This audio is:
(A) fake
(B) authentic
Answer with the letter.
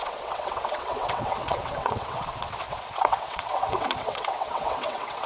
A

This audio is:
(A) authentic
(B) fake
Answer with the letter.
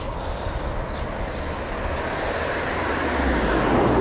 A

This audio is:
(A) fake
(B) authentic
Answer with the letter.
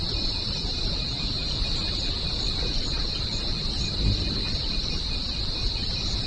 B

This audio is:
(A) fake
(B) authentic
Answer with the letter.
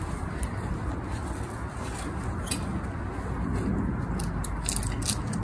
B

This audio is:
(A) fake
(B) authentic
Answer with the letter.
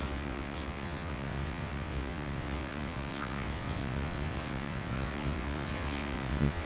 A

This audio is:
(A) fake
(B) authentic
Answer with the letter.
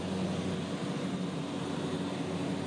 B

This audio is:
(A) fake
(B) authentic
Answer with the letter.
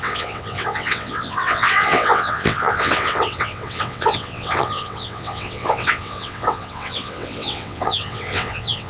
A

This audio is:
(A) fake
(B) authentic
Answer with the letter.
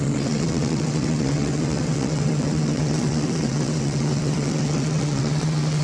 A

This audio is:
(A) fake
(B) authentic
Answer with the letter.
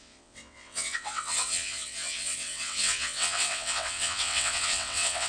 A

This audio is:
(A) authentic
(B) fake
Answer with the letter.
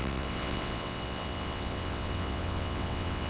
B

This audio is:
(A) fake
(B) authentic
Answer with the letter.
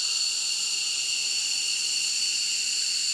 B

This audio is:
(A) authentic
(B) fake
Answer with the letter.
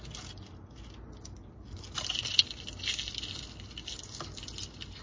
A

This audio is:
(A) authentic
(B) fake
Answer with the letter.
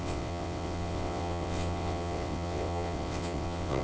B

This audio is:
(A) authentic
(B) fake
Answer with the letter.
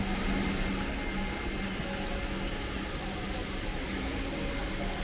A